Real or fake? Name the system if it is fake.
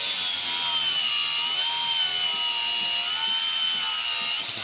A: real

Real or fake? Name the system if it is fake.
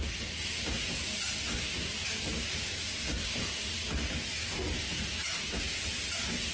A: real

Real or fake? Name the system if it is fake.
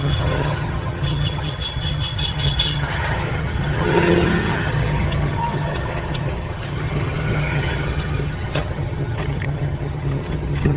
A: fake, vocoder, HiFi-GAN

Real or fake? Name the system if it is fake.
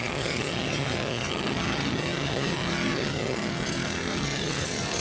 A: fake, vocoder, HiFi-GAN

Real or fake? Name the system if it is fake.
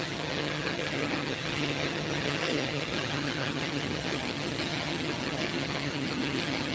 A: fake, vocoder, HiFi-GAN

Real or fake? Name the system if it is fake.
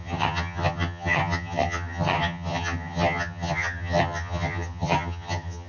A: fake, vocoder, HiFi-GAN